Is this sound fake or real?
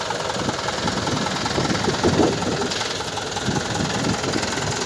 real